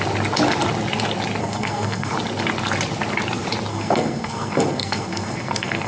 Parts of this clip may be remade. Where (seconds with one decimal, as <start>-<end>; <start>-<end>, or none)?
1.4-2.1; 3.7-5.9

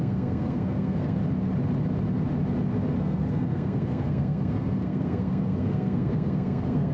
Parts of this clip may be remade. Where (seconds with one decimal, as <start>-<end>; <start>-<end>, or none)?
0.0-1.2; 3.0-6.9